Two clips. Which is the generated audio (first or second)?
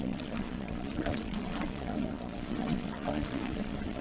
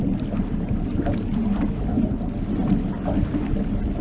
first